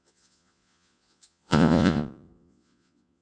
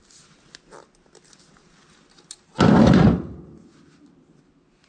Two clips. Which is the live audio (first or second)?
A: second